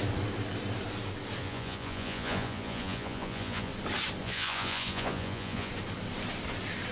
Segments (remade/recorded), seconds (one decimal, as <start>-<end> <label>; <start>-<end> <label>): 0.0-1.4 recorded; 1.4-3.7 remade; 3.7-4.2 recorded; 4.2-5.7 remade; 5.7-6.9 recorded